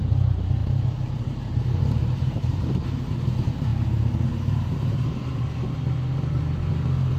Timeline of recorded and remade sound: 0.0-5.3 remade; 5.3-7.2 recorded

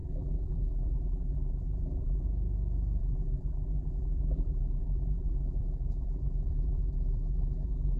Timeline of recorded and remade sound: 0.0-2.2 remade; 2.2-3.0 recorded; 3.0-8.0 remade

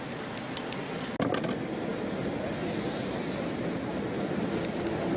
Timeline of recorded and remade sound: 0.0-5.2 recorded

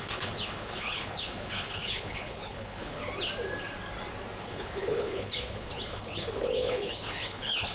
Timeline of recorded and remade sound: 0.0-3.0 remade; 3.0-4.4 recorded; 4.4-7.7 remade

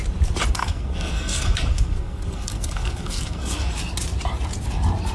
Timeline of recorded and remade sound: 0.0-0.6 recorded; 0.6-3.7 remade; 3.7-5.1 recorded

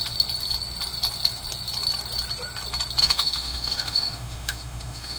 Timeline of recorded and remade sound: 0.0-3.0 recorded; 3.0-5.2 remade

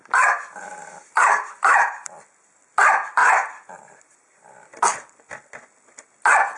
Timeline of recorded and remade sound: 0.0-6.6 recorded